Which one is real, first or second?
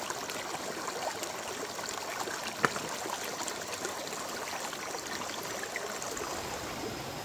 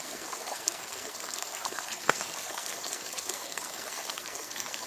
first